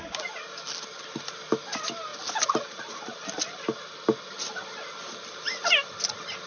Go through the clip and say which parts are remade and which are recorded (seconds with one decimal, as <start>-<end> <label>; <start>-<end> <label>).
0.0-6.5 recorded